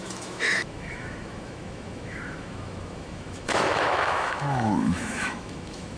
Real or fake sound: fake